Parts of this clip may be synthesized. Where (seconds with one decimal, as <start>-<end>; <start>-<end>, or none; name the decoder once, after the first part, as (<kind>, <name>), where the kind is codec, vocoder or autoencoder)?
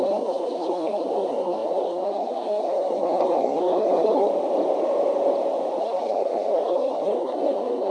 0.0-4.3 (codec, SNAC); 5.8-7.9